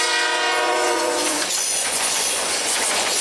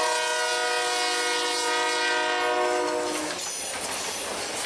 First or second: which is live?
second